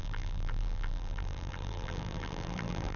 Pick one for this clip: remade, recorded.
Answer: remade